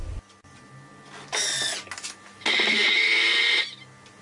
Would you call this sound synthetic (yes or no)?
no